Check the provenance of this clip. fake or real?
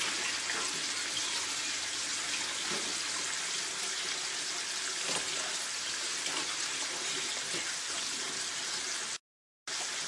real